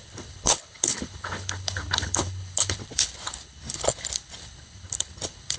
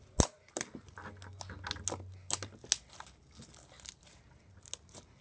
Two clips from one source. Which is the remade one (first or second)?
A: first